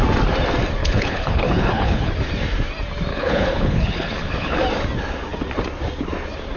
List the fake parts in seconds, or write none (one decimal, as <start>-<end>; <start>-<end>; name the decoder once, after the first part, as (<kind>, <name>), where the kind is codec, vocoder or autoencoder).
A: 0.8-2.1 (codec, HILCodec); 3.1-4.6